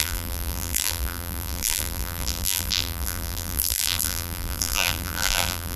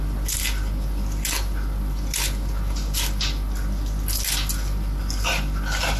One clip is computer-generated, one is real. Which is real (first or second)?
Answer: second